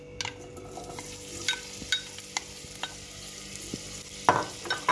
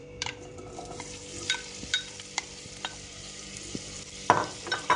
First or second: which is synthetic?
second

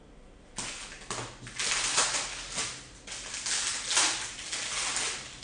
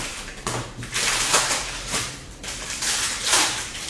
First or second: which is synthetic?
second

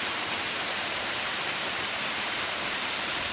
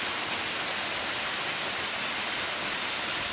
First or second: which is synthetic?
first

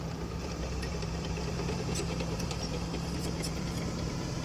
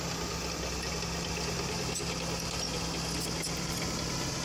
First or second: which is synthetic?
first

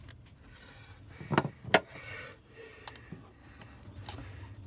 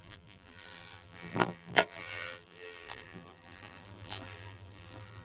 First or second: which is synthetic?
second